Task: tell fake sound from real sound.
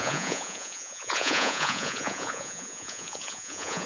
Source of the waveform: fake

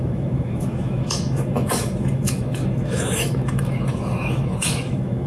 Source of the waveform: fake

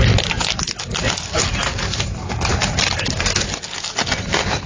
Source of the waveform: real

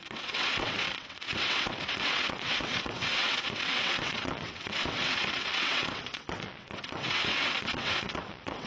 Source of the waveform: fake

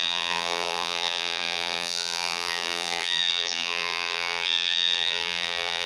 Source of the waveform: fake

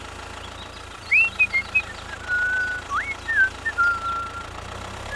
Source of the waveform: real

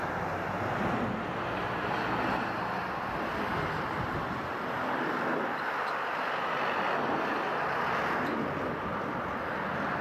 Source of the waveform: real